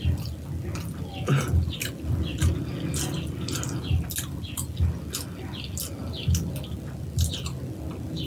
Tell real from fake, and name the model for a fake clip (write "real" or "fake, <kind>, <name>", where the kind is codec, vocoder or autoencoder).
real